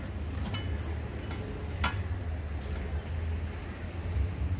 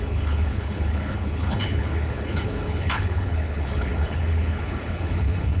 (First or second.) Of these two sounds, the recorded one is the first